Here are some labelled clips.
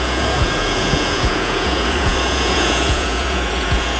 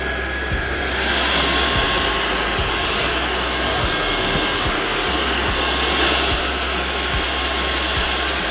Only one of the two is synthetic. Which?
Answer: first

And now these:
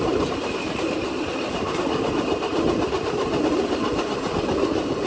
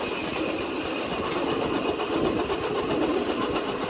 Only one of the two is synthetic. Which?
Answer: first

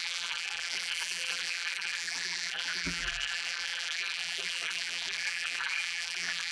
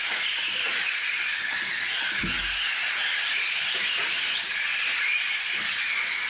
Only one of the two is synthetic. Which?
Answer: first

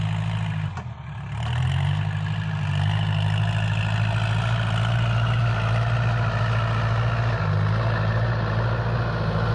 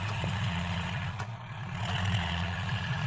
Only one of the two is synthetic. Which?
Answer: second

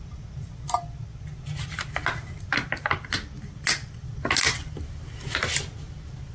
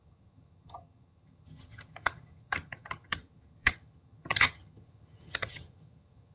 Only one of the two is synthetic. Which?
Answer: second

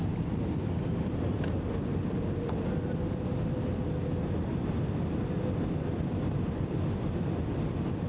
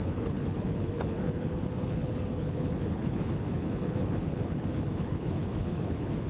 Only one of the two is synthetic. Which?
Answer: second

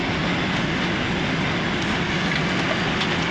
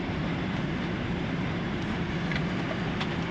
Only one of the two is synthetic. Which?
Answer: second